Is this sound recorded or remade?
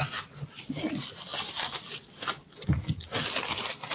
recorded